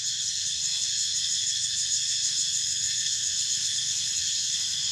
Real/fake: fake